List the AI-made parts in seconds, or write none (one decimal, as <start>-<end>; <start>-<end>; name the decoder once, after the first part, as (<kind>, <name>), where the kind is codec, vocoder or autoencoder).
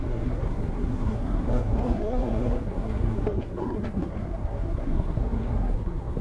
0.0-6.2 (codec, SNAC)